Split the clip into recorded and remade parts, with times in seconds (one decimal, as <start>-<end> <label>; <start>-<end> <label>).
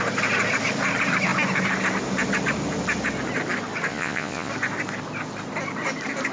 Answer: 0.0-3.9 recorded; 3.9-4.5 remade; 4.5-6.3 recorded